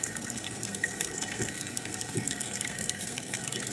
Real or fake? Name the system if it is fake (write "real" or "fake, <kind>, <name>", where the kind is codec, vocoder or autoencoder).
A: fake, codec, SNAC